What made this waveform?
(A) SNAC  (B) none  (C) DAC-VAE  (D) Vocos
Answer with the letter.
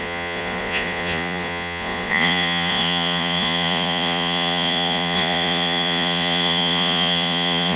D